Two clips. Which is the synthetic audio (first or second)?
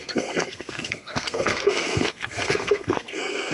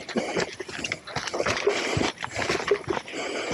first